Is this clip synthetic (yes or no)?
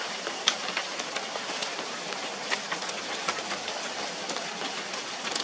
no